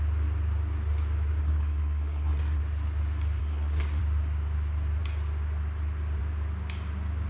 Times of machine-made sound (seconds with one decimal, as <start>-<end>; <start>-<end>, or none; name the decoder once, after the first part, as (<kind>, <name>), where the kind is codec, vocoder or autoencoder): 1.4-2.6 (codec, SNAC); 3.4-4.0